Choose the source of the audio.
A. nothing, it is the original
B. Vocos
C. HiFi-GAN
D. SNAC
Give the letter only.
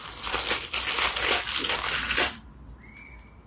A